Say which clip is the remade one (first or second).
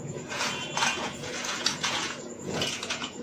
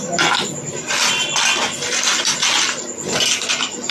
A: first